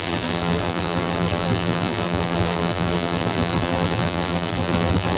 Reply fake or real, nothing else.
fake